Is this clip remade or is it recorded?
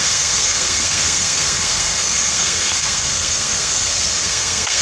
remade